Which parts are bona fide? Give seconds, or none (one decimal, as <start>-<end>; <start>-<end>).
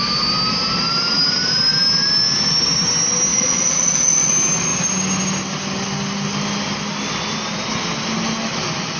0.0-3.3; 4.3-9.0